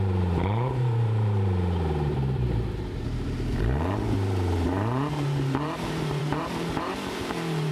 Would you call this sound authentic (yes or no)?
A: no